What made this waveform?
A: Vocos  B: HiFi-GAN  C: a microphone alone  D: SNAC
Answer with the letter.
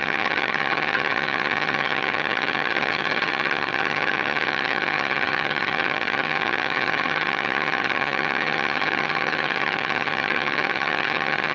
B